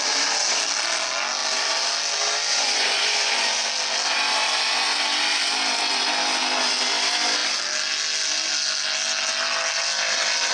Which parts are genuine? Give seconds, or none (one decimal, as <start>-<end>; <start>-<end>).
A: 0.0-2.5; 3.5-10.5